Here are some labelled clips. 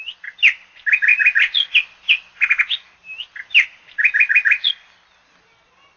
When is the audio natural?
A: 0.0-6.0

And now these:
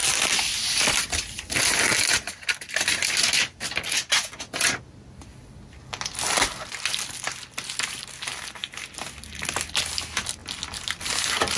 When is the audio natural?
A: 0.0-11.6

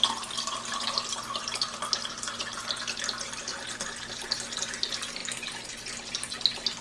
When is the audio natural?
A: 0.0-6.8